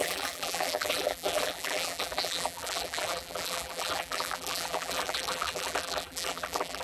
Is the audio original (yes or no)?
no